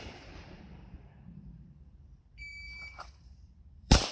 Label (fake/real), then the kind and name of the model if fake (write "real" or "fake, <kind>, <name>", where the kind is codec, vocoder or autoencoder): fake, vocoder, BigVGAN v2